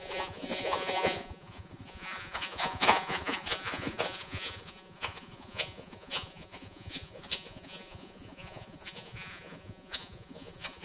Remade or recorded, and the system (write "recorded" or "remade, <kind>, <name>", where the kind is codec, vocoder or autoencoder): remade, vocoder, Vocos